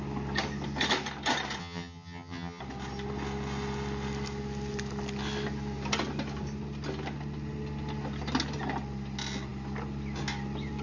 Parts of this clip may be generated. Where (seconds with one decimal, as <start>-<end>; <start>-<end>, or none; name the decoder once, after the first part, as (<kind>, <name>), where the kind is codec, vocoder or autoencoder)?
1.6-2.6 (vocoder, HiFi-GAN)